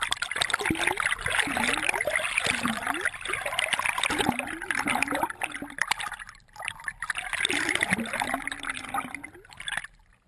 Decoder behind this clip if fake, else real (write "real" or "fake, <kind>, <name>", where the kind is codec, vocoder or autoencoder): real